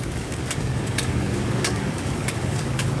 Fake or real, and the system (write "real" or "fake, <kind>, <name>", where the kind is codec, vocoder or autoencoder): fake, codec, DAC